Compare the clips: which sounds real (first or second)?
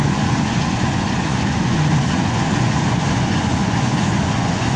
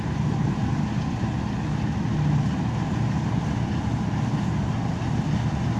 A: second